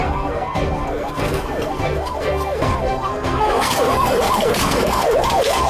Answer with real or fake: fake